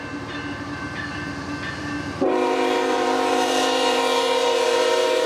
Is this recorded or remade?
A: remade